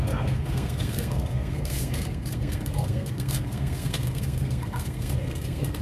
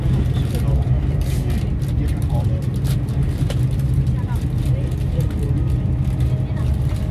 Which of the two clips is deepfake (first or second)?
first